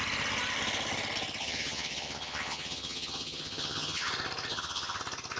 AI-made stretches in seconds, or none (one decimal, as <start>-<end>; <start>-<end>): 1.4-4.1; 4.5-5.0